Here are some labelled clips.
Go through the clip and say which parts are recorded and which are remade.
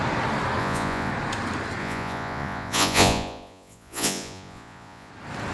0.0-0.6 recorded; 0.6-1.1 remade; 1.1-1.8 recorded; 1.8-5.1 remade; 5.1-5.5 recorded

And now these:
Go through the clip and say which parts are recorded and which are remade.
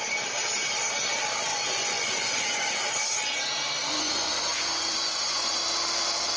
0.0-1.5 recorded; 1.5-2.7 remade; 2.7-3.8 recorded; 3.8-5.6 remade; 5.6-6.4 recorded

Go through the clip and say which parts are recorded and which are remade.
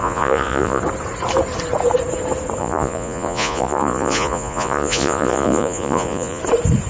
0.0-0.8 remade; 0.8-2.6 recorded; 2.6-6.4 remade; 6.4-6.9 recorded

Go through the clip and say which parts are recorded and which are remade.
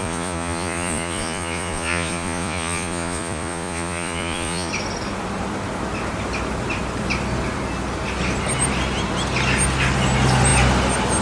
0.0-4.7 remade; 4.7-11.2 recorded